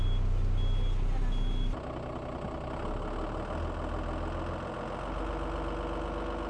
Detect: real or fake real